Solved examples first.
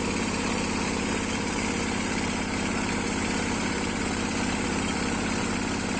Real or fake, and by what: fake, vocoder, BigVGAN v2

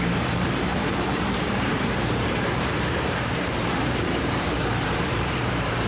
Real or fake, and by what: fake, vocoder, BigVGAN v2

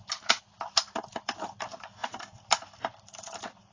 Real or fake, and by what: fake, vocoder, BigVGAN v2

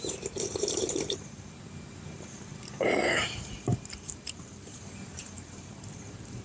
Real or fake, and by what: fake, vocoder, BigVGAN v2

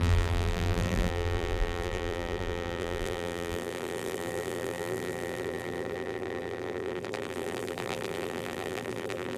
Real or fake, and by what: fake, vocoder, BigVGAN v2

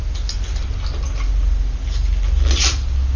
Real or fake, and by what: real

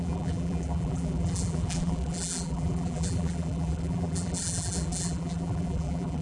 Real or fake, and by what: fake, vocoder, BigVGAN v2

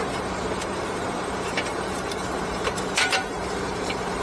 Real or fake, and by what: fake, vocoder, BigVGAN v2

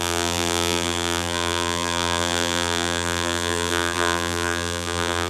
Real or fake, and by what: fake, vocoder, BigVGAN v2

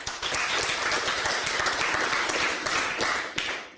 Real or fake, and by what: real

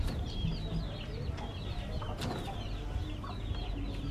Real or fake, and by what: real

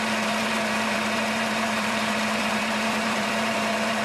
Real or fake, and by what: fake, vocoder, BigVGAN v2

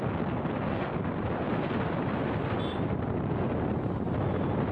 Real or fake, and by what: real